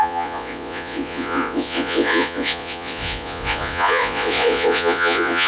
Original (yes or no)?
no